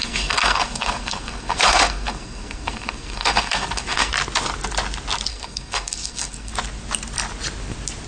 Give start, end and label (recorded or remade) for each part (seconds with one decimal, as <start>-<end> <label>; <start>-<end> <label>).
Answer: 0.0-4.1 remade; 4.1-5.3 recorded; 5.3-6.5 remade; 6.5-8.1 recorded